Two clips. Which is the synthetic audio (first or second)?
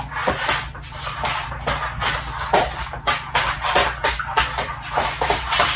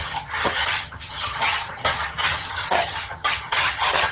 second